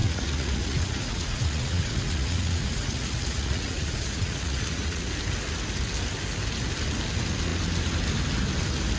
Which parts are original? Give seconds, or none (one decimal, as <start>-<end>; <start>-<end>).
5.1-9.0